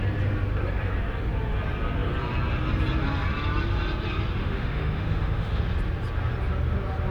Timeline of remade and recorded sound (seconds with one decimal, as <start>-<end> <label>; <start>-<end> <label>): 0.0-4.4 recorded; 4.4-5.6 remade; 5.6-7.1 recorded